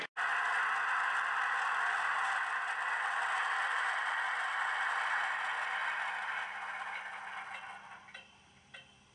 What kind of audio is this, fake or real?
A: real